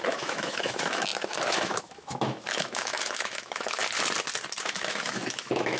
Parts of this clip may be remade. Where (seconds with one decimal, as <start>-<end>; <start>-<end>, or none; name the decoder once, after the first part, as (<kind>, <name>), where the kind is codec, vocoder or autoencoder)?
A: 0.0-3.8 (autoencoder, DAC-VAE); 4.6-5.8